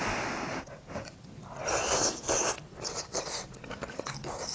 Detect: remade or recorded recorded